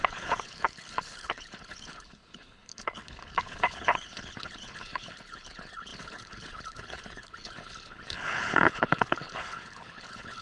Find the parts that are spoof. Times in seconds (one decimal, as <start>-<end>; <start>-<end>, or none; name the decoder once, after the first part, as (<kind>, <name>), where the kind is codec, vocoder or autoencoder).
0.0-10.4 (codec, HILCodec)